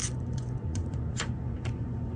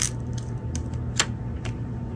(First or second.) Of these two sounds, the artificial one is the first